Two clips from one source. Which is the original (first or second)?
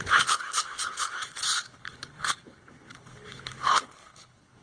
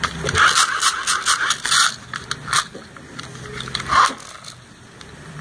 second